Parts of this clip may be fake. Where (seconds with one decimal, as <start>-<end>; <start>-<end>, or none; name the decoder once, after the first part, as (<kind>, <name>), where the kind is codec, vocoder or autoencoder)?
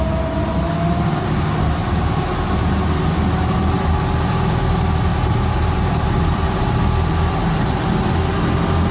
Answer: 1.8-2.7 (vocoder, BigVGAN v2); 5.1-6.7